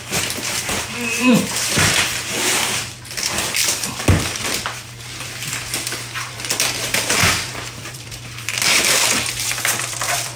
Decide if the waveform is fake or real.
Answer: fake